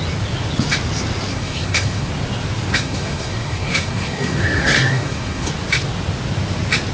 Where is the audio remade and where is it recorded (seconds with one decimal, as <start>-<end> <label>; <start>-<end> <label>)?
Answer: 0.0-1.3 recorded; 1.3-2.1 remade; 2.1-2.7 recorded; 2.7-5.5 remade; 5.5-6.9 recorded